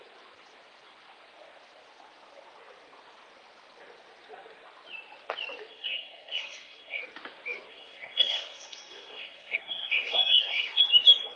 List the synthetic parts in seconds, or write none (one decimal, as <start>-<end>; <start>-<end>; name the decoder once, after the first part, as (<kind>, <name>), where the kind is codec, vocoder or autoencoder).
5.7-7.0 (codec, SNAC); 7.7-10.8